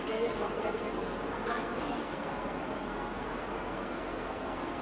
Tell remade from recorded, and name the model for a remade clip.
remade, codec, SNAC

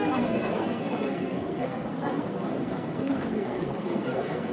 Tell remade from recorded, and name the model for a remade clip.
remade, codec, SNAC